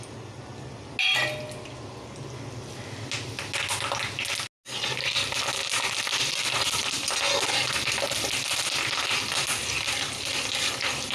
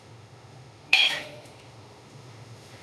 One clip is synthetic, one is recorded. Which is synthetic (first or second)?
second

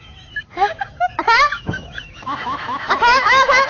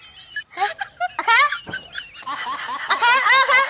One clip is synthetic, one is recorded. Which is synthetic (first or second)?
first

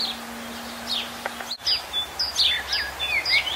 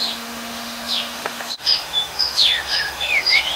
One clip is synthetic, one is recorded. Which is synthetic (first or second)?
second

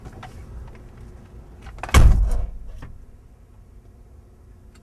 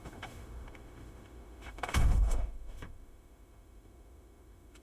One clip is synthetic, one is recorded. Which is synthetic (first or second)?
second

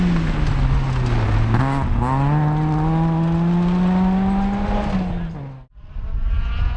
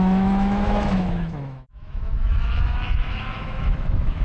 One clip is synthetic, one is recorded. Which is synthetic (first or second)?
second